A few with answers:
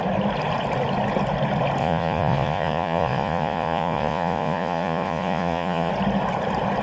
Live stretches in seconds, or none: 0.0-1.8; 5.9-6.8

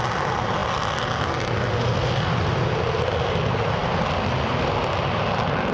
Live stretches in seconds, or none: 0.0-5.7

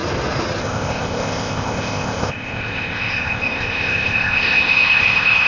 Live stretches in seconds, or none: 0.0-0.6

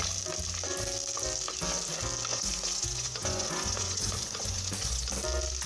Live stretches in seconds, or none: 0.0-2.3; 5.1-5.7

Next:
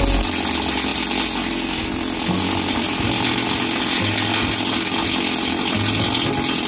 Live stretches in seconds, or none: 0.0-6.7

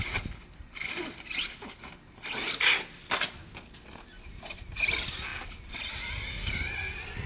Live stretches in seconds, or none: 0.0-7.3